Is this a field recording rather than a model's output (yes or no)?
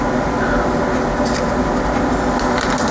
yes